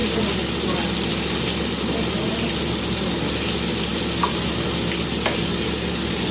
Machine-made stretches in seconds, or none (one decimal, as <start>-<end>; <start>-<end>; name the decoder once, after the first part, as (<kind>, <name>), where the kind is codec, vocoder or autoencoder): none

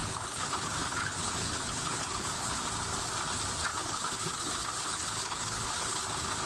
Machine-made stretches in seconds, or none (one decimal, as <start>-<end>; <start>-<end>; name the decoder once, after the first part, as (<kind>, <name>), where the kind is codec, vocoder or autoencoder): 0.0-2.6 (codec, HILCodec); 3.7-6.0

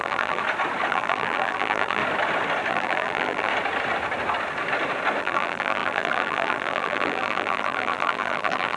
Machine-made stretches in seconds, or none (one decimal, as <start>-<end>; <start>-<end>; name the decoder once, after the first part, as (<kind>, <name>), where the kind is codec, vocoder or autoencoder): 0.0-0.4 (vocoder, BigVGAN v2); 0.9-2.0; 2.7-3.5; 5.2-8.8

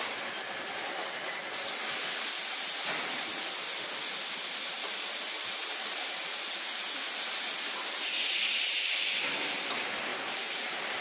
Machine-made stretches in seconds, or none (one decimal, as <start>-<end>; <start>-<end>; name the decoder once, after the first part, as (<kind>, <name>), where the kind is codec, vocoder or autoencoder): none